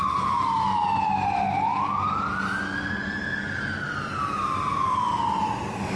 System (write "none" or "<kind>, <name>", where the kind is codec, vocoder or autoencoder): none